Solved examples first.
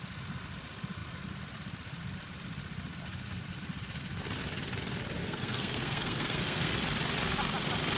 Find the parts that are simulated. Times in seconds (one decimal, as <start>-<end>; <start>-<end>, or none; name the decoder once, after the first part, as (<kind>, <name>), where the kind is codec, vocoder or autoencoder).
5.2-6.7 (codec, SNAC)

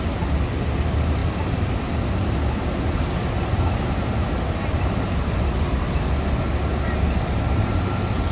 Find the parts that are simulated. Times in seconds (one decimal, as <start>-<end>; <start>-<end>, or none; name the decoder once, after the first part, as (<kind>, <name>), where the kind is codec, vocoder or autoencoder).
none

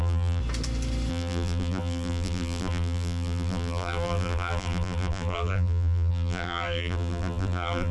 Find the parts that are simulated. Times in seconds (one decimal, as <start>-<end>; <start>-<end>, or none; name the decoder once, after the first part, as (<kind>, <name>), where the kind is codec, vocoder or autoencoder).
0.0-0.4 (vocoder, BigVGAN v2); 1.1-7.9

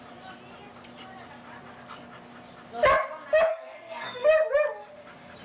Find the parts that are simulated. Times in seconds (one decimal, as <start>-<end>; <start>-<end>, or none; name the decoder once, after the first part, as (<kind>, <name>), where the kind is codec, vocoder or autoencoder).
3.5-4.3 (codec, SNAC)